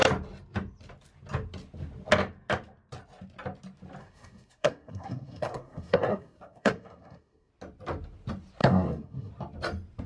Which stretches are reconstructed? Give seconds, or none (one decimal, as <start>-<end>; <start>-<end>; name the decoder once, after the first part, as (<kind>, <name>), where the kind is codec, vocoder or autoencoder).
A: 4.0-7.5 (codec, SNAC); 8.6-9.3